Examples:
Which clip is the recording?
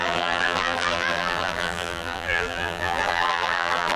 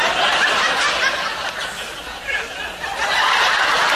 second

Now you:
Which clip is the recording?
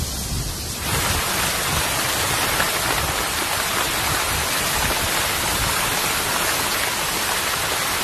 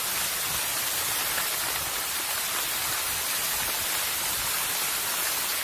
first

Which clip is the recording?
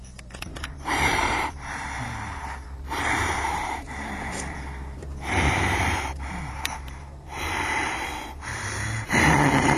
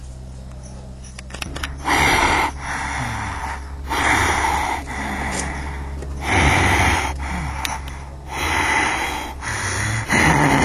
second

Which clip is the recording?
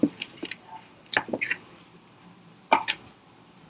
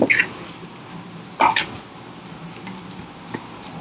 second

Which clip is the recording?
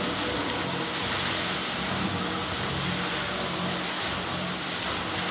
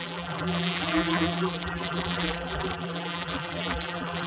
first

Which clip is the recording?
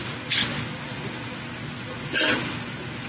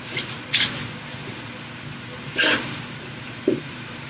first